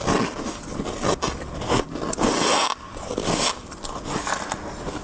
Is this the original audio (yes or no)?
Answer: yes